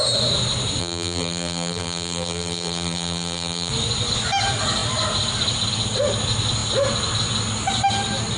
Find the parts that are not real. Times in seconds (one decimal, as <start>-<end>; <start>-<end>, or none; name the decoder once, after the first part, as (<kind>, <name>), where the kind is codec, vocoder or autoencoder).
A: 0.8-3.7 (vocoder, BigVGAN v2)